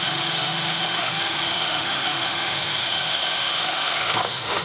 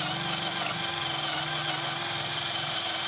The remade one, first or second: first